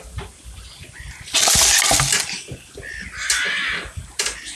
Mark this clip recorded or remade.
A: recorded